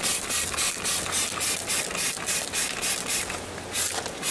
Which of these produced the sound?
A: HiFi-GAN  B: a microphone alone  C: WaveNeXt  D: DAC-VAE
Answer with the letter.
B